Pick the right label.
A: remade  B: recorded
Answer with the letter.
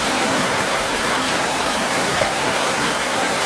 A